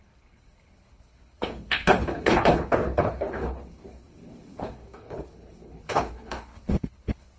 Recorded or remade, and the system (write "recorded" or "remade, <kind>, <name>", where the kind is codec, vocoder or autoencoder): remade, codec, HILCodec